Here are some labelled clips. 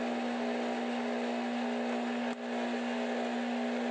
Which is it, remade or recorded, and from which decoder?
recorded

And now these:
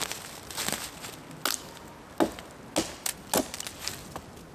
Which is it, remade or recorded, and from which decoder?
recorded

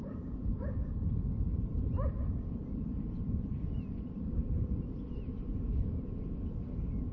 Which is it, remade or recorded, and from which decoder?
remade, vocoder, BigVGAN v2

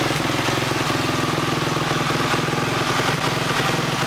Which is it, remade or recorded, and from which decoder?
recorded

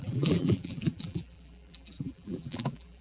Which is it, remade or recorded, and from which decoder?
remade, vocoder, BigVGAN v2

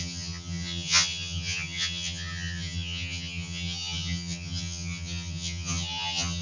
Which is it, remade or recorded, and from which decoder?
remade, vocoder, HiFi-GAN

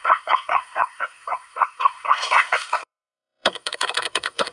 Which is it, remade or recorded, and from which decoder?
remade, codec, SNAC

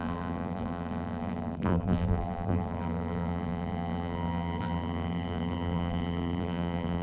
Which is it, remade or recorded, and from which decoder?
remade, vocoder, BigVGAN v2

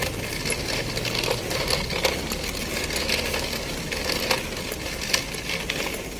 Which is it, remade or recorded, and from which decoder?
recorded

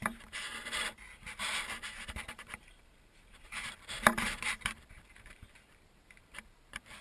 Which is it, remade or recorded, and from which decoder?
remade, vocoder, BigVGAN v2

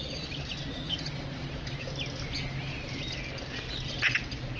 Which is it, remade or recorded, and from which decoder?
recorded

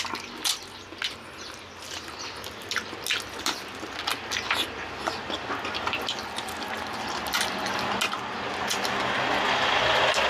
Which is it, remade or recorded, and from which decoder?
recorded